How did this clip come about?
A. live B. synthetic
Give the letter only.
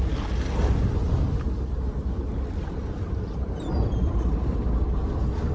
A